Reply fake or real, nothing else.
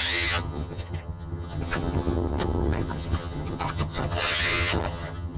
fake